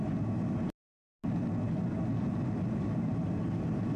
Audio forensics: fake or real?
real